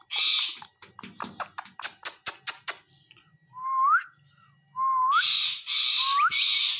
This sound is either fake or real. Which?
real